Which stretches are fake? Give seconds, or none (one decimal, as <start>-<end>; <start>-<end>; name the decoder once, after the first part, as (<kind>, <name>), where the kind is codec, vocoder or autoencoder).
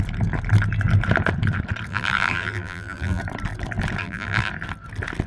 1.9-3.2 (vocoder, BigVGAN v2); 4.0-4.5